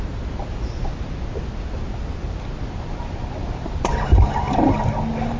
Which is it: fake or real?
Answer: real